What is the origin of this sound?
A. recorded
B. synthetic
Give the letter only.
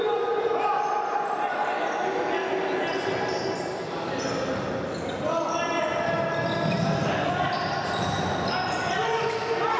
A